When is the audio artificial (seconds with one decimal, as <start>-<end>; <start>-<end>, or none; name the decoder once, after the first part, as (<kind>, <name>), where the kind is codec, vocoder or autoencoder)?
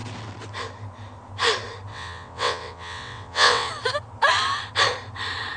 1.9-3.7 (vocoder, WaveNeXt)